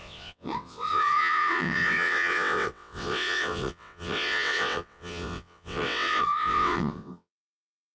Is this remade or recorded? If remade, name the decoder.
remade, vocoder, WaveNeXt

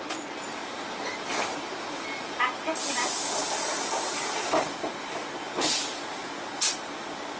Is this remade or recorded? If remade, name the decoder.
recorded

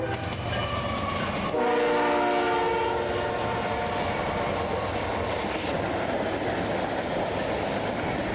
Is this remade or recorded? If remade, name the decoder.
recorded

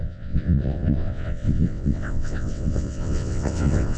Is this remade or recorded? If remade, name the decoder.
remade, vocoder, WaveNeXt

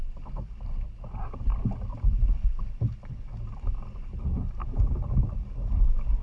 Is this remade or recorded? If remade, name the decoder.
recorded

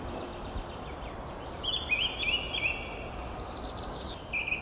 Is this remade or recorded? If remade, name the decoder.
recorded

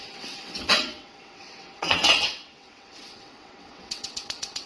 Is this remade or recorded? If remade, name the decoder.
remade, vocoder, WaveNeXt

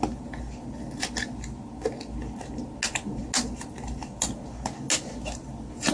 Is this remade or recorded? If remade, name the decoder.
recorded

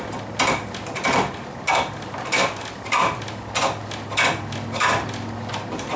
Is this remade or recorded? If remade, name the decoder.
recorded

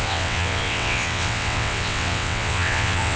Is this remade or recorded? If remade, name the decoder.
remade, vocoder, WaveNeXt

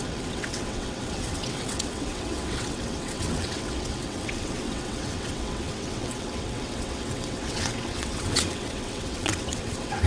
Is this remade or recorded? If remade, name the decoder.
remade, vocoder, WaveNeXt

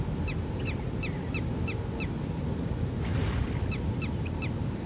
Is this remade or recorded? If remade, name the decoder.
recorded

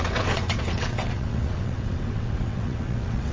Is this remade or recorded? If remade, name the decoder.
remade, vocoder, WaveNeXt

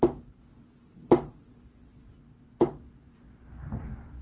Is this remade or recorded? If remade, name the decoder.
recorded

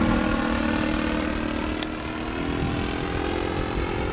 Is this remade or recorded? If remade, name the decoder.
recorded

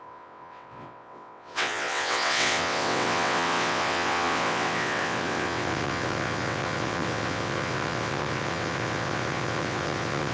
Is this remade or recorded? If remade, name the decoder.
remade, vocoder, WaveNeXt